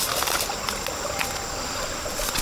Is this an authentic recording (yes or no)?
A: yes